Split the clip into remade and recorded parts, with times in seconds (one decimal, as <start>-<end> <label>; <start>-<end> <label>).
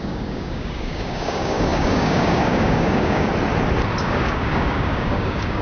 0.0-3.3 remade; 3.3-4.0 recorded; 4.0-5.6 remade